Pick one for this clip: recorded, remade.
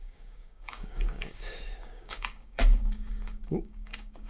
remade